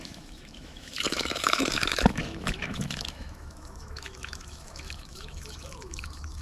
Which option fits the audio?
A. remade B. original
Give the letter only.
A